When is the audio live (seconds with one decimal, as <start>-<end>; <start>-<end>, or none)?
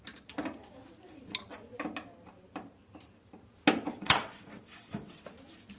0.0-3.9; 5.2-5.8